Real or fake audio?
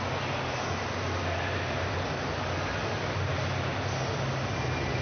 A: real